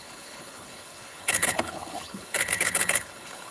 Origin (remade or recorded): remade